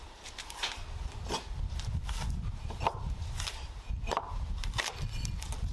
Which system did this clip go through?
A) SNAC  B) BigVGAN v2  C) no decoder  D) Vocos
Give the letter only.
C